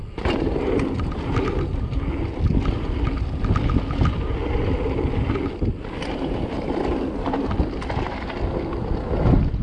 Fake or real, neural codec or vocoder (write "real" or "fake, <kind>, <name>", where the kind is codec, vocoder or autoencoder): real